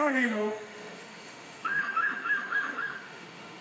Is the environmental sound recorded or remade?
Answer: remade